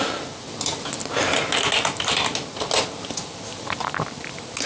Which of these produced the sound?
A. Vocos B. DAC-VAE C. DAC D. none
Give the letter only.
D